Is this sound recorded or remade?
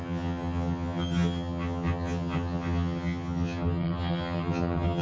remade